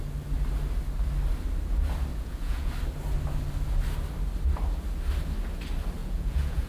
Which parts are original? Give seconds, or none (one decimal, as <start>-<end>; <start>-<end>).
0.0-2.1; 2.7-6.0